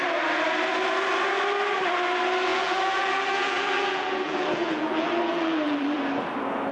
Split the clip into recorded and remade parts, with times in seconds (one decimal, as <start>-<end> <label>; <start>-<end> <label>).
0.0-2.5 recorded; 2.5-6.0 remade; 6.0-6.7 recorded